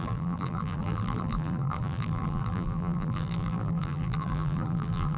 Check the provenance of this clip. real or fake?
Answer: fake